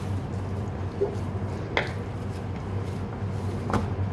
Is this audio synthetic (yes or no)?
no